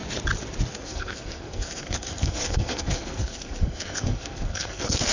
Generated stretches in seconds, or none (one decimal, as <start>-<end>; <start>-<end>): 0.7-5.1